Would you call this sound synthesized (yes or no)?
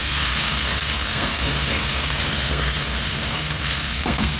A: yes